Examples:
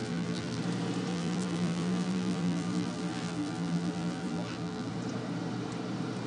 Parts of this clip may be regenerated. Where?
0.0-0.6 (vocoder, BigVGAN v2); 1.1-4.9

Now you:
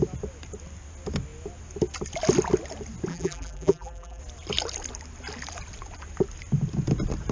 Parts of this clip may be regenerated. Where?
3.1-4.2 (vocoder, BigVGAN v2)